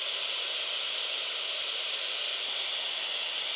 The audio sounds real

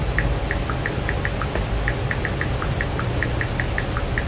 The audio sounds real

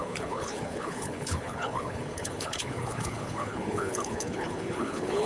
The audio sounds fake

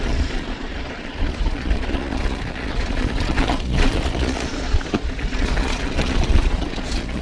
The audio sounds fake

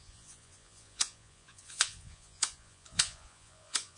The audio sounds fake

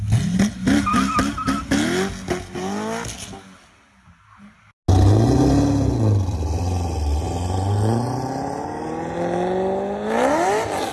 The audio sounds real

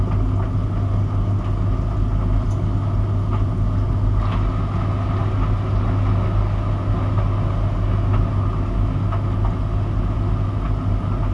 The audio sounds real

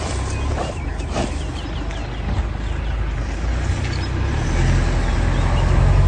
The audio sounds real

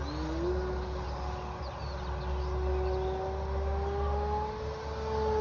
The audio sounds real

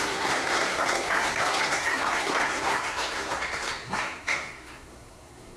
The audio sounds fake